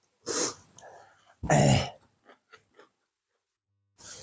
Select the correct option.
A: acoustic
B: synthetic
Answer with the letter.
A